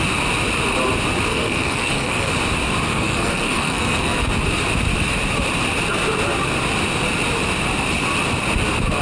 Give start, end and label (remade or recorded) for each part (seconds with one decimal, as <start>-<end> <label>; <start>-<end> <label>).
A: 0.0-1.3 recorded; 1.3-2.3 remade; 2.3-2.9 recorded; 2.9-4.3 remade; 4.3-9.0 recorded

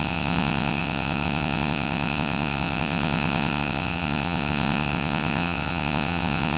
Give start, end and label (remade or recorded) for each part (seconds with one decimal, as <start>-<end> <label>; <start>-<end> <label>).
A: 0.0-6.6 remade

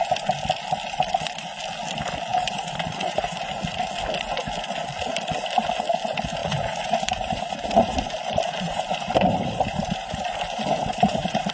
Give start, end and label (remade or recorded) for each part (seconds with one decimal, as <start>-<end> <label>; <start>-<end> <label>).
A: 0.0-2.3 recorded; 2.3-3.5 remade; 3.5-6.4 recorded; 6.4-11.5 remade

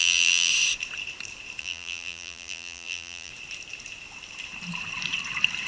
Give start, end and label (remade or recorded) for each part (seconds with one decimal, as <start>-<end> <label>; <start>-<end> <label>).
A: 0.0-0.5 remade; 0.5-1.6 recorded; 1.6-3.3 remade; 3.3-5.7 recorded

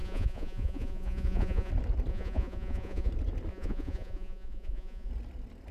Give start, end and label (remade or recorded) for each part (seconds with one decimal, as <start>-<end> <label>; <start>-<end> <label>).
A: 0.0-1.7 remade; 1.7-2.1 recorded; 2.1-3.1 remade; 3.1-3.5 recorded; 3.5-5.1 remade; 5.1-5.7 recorded